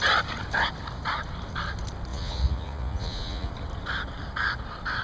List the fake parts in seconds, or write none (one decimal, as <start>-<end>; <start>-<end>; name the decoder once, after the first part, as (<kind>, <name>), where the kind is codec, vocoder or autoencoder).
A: 2.1-3.5 (vocoder, Vocos)